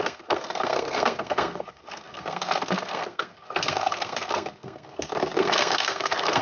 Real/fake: fake